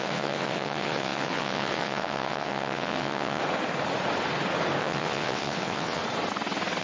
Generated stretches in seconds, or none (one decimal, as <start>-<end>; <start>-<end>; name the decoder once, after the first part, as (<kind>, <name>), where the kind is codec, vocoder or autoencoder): 0.0-3.4 (vocoder, WaveNeXt); 4.8-6.0